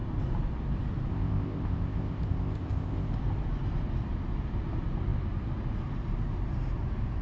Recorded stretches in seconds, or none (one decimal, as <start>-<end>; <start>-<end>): 0.0-1.1; 3.1-7.2